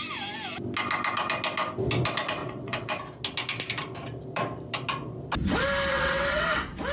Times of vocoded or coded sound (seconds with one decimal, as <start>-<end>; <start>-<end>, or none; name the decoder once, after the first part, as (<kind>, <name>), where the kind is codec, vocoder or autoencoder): 2.4-3.0 (vocoder, WaveNeXt); 5.9-6.5